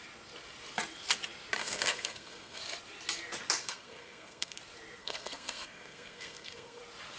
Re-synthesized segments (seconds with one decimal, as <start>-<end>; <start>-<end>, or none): 1.6-2.6; 3.6-4.6; 5.0-6.8